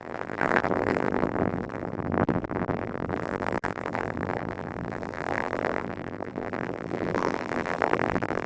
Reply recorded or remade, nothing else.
remade